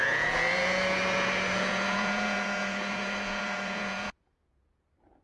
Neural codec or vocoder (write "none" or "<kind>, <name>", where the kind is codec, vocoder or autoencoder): vocoder, Vocos